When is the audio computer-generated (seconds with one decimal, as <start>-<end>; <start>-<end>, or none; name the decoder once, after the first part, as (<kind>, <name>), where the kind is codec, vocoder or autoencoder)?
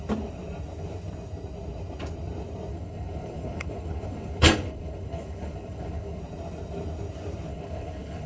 2.7-6.2 (codec, HILCodec); 7.5-8.3